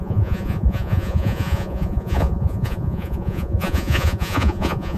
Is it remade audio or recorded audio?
remade